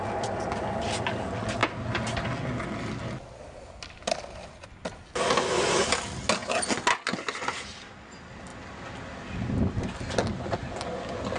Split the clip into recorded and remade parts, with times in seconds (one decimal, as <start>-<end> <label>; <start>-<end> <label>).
0.0-11.4 recorded